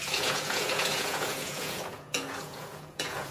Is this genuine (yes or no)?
no